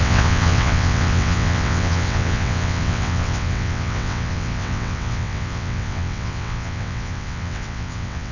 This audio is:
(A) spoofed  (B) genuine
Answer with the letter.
A